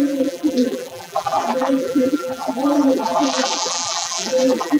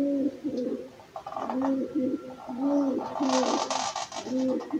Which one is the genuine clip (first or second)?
second